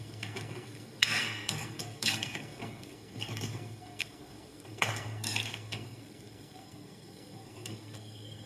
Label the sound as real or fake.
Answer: fake